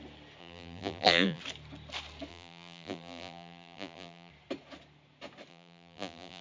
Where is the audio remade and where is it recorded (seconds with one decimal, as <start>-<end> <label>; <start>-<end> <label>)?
0.0-0.4 recorded; 0.4-1.4 remade; 1.4-2.3 recorded; 2.3-4.3 remade; 4.3-5.5 recorded; 5.5-6.4 remade